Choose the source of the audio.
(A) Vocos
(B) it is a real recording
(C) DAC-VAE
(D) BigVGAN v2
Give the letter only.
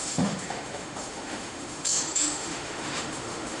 C